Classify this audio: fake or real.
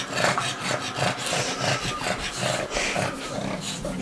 real